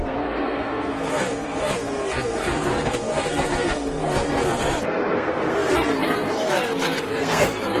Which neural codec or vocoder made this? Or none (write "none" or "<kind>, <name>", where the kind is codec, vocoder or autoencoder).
codec, SNAC